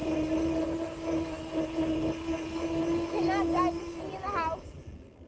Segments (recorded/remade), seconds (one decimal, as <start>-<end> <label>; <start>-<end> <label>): 0.0-1.0 remade; 1.0-5.3 recorded